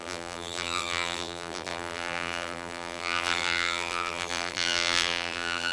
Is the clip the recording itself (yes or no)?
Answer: no